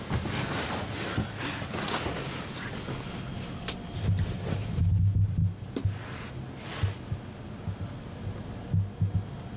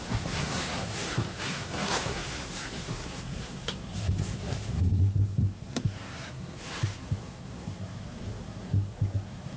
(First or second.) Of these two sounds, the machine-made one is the second